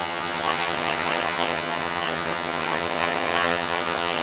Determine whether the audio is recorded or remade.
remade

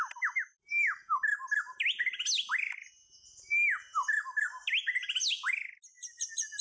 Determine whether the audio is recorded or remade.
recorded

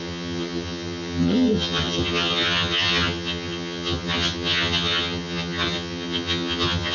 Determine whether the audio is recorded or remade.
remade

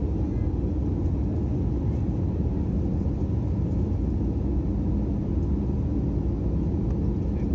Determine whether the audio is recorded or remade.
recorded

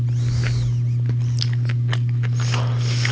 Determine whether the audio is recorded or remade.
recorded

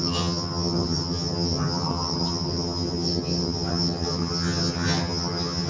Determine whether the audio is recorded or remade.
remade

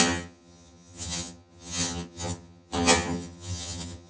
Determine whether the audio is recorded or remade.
remade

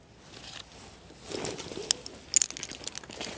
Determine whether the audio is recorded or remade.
recorded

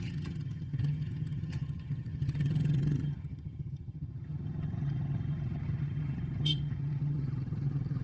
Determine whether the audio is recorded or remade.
remade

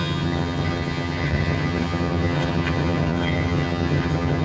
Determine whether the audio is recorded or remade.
remade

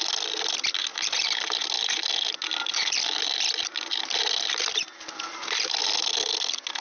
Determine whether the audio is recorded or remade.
recorded